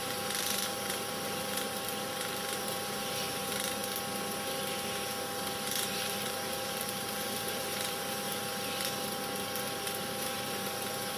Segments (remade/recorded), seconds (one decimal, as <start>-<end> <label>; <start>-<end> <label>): 0.0-3.8 remade; 3.8-5.9 recorded; 5.9-8.4 remade; 8.4-9.8 recorded; 9.8-11.2 remade